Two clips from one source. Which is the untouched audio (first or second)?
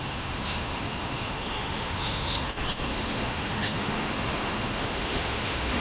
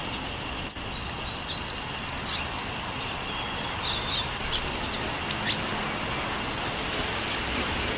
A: second